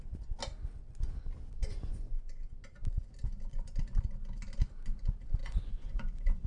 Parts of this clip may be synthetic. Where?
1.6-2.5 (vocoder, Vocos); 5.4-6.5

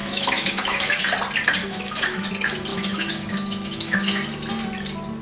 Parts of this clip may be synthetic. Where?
0.0-1.0 (autoencoder, DAC-VAE); 1.6-2.3; 2.7-4.2

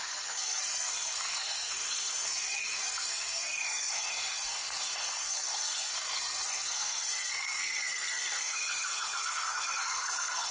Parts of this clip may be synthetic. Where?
0.0-10.5 (codec, SNAC)